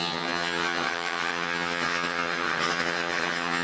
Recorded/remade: remade